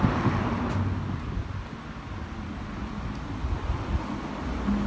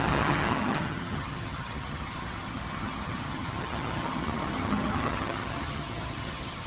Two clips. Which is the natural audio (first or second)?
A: first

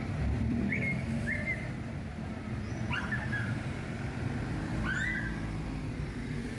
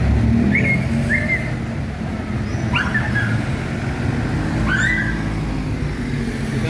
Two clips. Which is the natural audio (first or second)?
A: second